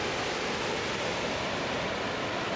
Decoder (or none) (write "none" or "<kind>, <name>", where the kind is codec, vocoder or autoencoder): none